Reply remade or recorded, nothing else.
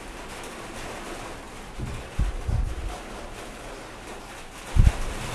recorded